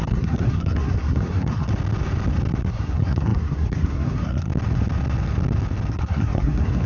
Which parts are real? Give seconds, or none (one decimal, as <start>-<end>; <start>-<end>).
1.7-2.7; 4.5-5.9